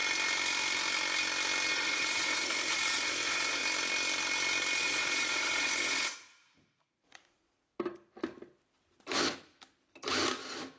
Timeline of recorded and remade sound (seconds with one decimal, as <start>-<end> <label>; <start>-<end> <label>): 0.0-1.7 recorded; 1.7-3.6 remade; 3.6-4.8 recorded; 4.8-7.7 remade; 7.7-10.8 recorded